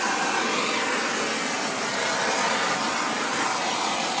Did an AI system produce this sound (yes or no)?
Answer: no